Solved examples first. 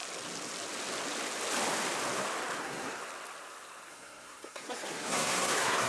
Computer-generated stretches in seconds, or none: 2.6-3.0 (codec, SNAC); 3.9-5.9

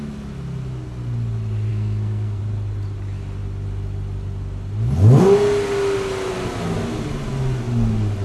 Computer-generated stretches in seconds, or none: 1.7-2.4 (codec, SNAC)

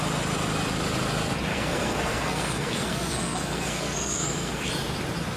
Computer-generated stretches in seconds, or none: 1.5-4.7 (codec, SNAC)